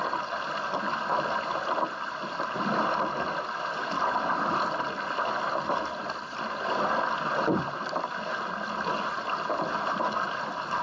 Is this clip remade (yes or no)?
no